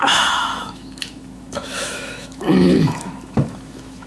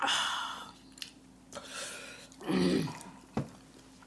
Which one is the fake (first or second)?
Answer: first